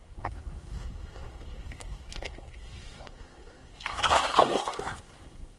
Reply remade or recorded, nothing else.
remade